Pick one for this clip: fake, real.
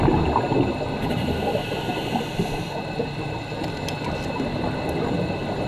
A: real